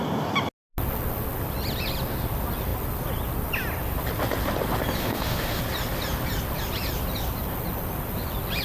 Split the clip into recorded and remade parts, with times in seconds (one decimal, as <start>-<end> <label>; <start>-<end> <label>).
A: 0.0-5.0 recorded; 5.0-5.6 remade; 5.6-8.6 recorded